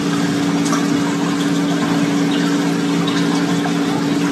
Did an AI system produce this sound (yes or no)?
no